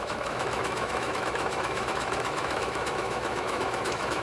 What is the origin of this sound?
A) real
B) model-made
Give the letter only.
B